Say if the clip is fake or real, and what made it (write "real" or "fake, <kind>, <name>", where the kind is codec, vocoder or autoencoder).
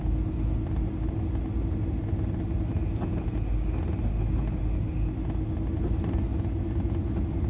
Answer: real